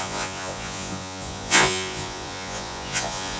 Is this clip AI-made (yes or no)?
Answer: yes